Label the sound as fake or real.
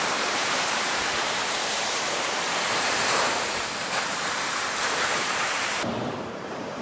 fake